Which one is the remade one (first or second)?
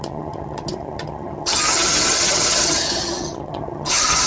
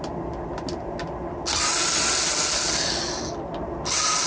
first